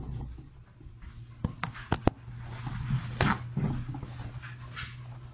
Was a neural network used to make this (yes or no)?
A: no